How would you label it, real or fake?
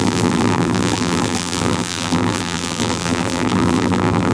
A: fake